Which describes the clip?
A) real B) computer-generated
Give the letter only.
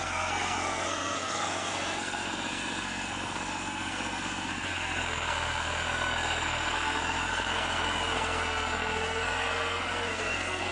B